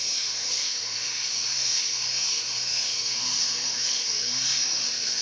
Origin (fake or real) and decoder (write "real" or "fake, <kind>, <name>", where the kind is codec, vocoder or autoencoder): fake, autoencoder, DAC-VAE